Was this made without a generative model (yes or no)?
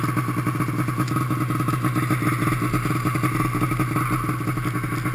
yes